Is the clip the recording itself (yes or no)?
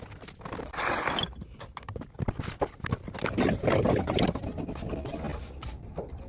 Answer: yes